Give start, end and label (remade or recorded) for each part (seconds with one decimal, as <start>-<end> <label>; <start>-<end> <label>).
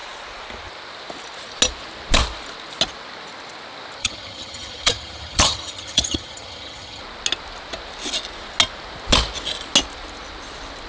0.0-4.0 recorded; 4.0-7.0 remade; 7.0-10.9 recorded